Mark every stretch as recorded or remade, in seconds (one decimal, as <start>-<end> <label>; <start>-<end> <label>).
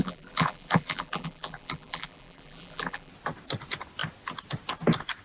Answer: 0.0-3.1 remade; 3.1-5.2 recorded